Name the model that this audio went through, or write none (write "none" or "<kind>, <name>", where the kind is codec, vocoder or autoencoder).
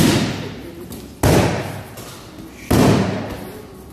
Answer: none